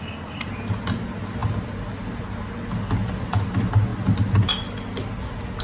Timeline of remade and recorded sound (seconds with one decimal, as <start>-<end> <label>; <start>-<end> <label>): 0.0-5.6 recorded